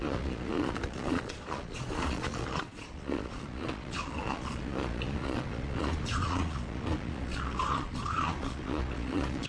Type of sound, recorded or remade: remade